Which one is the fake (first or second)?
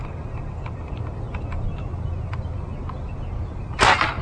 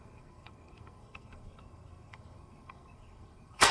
second